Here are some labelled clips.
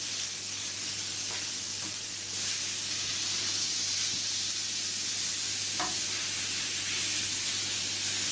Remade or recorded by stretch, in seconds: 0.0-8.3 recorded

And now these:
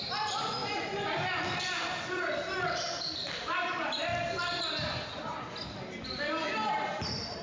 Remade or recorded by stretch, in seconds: 0.0-4.1 remade; 4.1-7.0 recorded; 7.0-7.4 remade

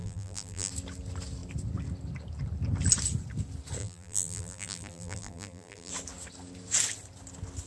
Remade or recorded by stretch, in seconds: 0.0-0.7 remade; 0.7-3.8 recorded; 3.8-5.9 remade; 5.9-7.7 recorded

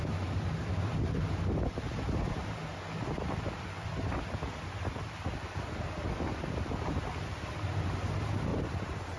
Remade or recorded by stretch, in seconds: 0.0-8.5 recorded; 8.5-9.2 remade

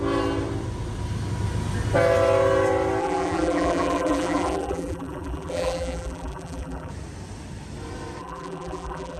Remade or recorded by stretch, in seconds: 0.0-3.0 recorded; 3.0-6.9 remade; 6.9-8.2 recorded; 8.2-9.2 remade